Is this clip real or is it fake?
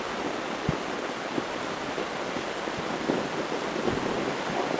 real